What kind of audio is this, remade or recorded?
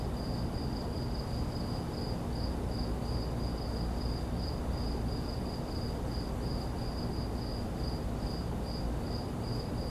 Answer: recorded